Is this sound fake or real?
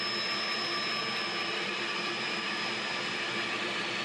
real